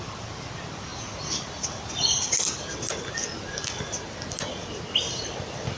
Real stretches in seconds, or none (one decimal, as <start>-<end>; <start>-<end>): 0.0-5.8